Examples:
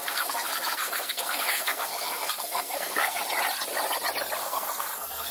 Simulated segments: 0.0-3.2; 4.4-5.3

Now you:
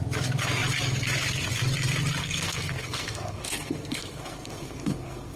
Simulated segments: 2.2-5.4

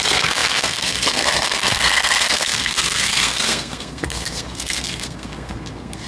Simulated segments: 0.0-6.1

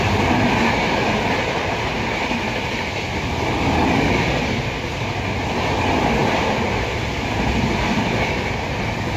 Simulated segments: none

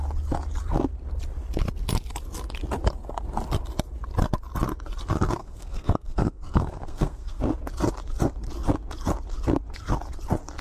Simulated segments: 5.4-7.4

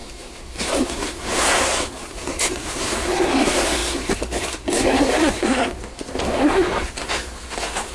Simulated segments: 0.0-7.9

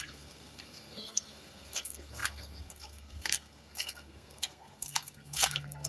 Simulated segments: 0.0-5.9